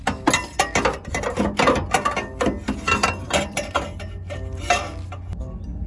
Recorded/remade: recorded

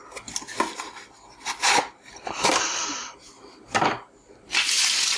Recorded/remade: recorded